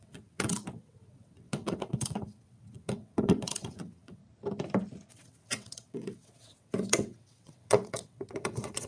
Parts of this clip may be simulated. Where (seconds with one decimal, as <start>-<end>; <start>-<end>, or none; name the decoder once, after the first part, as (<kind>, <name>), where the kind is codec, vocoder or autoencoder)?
0.0-4.2 (vocoder, WaveNeXt); 5.1-8.9